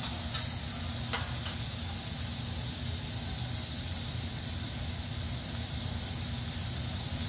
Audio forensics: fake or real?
real